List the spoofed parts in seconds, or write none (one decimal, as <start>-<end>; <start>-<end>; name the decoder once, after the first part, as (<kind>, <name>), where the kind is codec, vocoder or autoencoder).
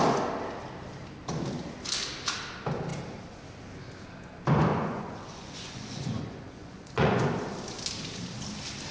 4.7-7.3 (vocoder, Vocos)